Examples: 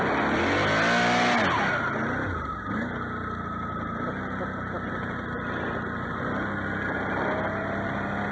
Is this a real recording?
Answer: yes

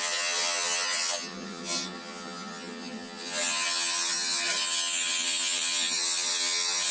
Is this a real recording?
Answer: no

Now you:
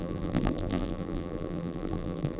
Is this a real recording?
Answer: no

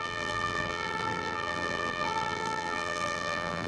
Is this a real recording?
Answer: no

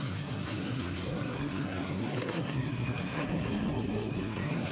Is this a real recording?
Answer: no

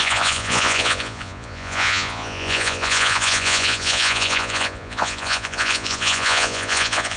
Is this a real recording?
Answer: no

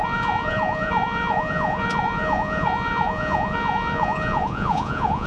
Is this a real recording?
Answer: no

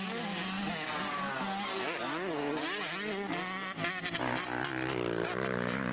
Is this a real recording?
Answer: yes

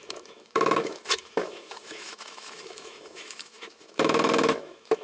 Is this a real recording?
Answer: no